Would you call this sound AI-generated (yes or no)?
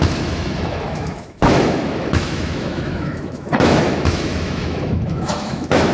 yes